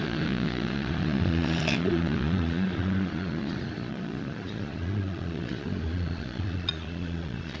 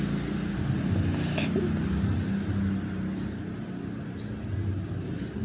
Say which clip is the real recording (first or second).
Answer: second